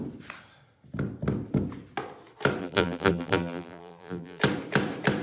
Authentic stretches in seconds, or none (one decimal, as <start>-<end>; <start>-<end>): 0.0-2.6; 4.4-5.2